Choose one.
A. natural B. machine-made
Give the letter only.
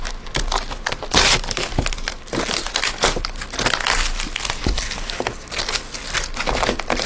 A